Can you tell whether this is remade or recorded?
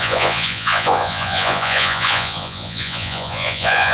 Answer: remade